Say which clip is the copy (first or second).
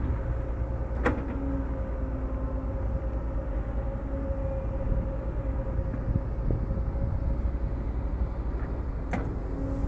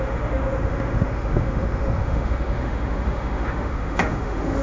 second